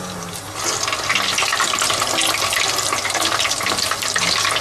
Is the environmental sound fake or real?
real